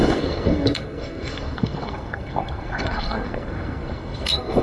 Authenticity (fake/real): fake